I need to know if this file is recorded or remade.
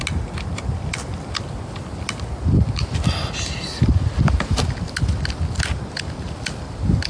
recorded